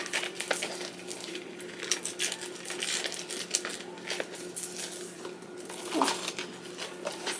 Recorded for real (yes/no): yes